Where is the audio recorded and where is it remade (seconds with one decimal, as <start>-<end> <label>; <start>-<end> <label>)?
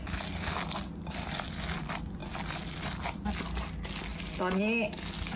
0.0-5.4 recorded